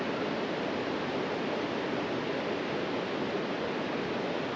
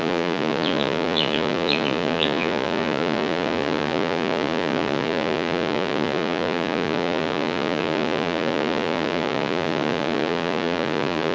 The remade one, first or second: second